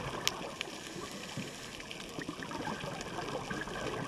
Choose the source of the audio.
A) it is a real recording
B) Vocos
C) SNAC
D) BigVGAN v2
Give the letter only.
A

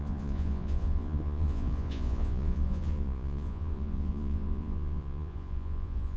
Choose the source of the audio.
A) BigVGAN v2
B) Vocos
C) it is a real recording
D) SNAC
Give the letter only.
B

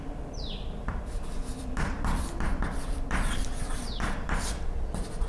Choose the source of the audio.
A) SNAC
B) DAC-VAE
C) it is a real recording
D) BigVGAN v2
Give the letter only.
D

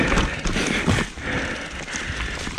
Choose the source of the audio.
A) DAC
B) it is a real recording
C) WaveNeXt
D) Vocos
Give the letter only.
B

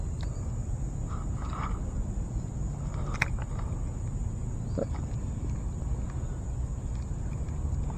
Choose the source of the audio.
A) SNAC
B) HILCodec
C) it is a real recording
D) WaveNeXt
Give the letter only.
C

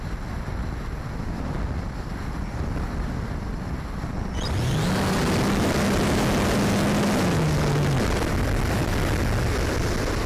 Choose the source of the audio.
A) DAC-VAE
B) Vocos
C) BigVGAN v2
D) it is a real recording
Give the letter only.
D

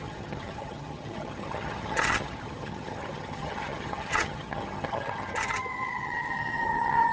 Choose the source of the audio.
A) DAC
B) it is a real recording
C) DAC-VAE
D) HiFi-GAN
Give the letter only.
D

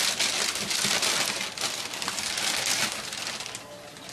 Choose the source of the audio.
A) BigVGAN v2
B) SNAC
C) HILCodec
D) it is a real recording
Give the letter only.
D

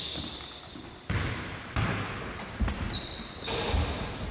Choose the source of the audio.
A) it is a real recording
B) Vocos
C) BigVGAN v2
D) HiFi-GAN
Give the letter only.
C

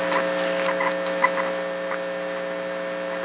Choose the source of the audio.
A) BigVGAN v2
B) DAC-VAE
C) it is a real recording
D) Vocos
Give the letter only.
C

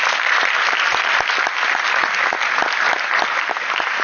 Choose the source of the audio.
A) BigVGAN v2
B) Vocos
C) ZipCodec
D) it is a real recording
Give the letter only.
D